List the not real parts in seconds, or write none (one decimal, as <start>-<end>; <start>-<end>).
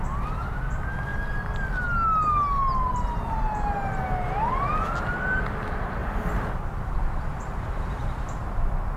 7.3-8.4